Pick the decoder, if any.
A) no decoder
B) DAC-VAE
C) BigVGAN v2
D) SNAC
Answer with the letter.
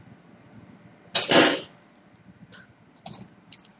A